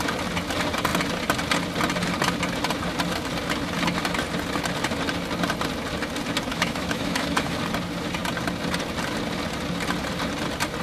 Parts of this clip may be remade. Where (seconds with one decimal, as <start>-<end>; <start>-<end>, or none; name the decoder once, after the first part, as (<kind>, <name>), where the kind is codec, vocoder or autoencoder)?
6.5-7.6 (autoencoder, DAC-VAE)